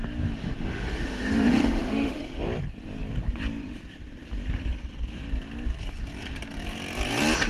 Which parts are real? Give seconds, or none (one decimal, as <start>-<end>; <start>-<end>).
0.0-0.4; 2.4-7.5